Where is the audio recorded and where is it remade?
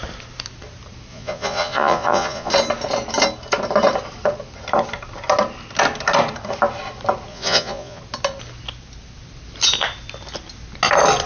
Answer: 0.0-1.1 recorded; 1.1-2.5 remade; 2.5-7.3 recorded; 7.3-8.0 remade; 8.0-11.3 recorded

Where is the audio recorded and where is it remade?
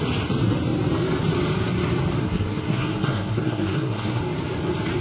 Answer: 0.0-2.2 recorded; 2.2-4.2 remade; 4.2-5.0 recorded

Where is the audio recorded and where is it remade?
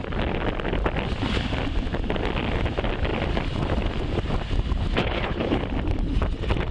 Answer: 0.0-5.0 recorded; 5.0-5.6 remade; 5.6-6.7 recorded